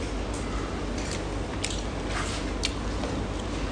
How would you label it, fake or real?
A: real